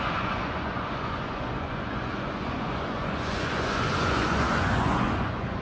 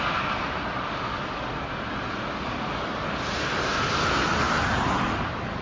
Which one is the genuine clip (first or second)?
second